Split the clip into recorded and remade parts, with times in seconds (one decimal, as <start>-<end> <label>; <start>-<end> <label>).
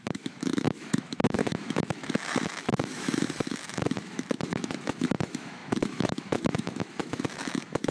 0.0-7.9 remade